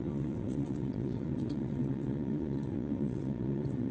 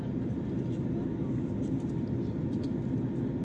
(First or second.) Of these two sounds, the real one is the second